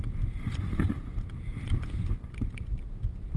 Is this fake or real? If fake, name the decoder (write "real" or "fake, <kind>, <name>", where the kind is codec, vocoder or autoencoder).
real